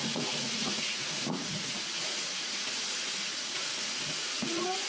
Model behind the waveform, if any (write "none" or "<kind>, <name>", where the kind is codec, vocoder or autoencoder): vocoder, Vocos